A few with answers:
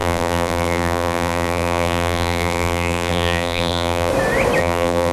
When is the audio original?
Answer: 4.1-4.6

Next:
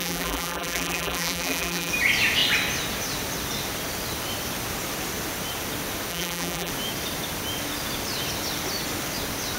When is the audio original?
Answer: 1.9-6.1; 6.7-9.6

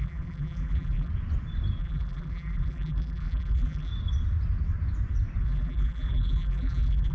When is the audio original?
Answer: 1.1-1.8; 3.9-5.4

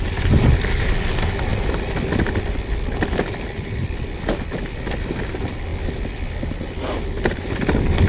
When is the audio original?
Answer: 0.0-8.1

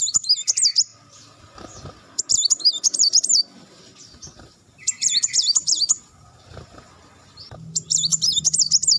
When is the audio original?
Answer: 0.0-0.9; 2.2-3.0; 7.4-9.0